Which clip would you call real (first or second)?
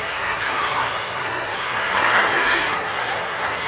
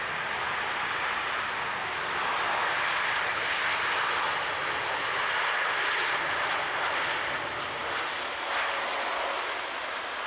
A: second